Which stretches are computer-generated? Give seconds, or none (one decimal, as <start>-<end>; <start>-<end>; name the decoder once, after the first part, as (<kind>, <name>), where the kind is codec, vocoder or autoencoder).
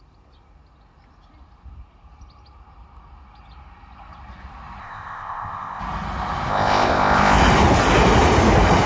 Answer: 4.8-5.8 (codec, ZipCodec); 6.5-7.4